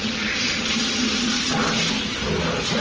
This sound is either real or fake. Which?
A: real